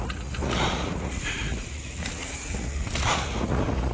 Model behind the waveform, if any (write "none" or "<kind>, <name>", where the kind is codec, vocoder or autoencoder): vocoder, Vocos